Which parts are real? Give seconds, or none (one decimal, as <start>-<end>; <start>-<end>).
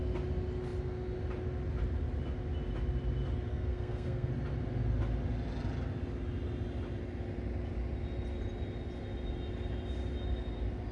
0.0-3.5; 4.3-10.9